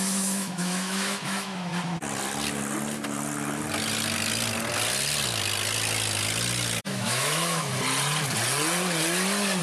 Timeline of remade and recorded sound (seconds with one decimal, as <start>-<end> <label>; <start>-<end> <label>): 0.0-1.7 remade; 1.7-6.8 recorded; 6.8-7.7 remade; 7.7-9.6 recorded